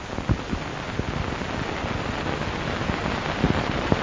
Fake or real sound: real